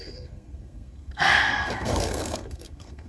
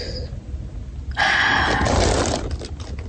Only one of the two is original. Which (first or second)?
second